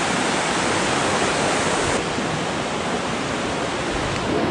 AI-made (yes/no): no